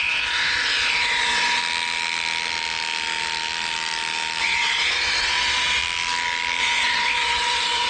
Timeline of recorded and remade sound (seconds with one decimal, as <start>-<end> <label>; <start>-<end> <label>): 0.0-1.6 remade; 1.6-4.4 recorded; 4.4-5.8 remade; 5.8-6.6 recorded; 6.6-7.9 remade